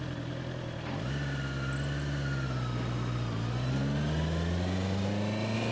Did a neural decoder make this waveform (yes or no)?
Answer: no